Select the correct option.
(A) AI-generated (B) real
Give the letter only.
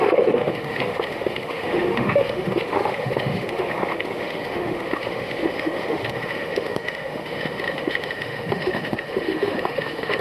A